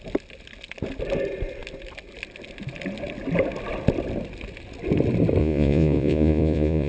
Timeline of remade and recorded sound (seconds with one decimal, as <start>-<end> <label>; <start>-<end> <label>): 0.0-5.4 recorded; 5.4-6.9 remade